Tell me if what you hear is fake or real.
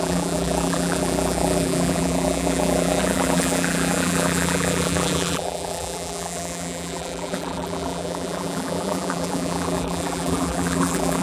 fake